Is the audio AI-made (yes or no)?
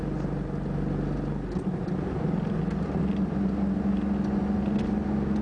no